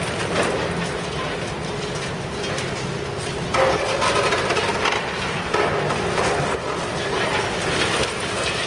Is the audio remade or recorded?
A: recorded